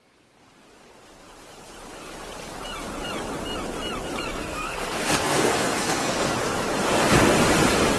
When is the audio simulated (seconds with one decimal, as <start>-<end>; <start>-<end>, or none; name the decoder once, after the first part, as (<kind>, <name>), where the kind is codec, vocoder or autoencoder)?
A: 4.3-6.3 (codec, SNAC)